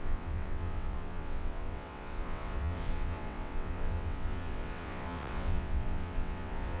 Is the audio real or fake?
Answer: fake